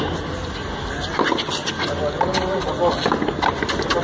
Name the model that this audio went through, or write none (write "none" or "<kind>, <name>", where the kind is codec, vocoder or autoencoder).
none